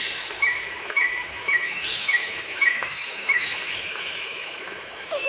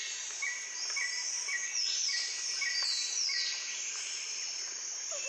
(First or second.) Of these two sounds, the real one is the second